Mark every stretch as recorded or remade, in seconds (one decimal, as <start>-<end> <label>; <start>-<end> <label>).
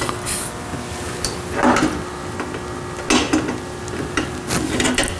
0.0-5.2 recorded